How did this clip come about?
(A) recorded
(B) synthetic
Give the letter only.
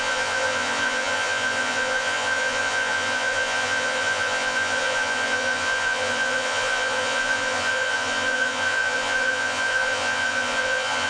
B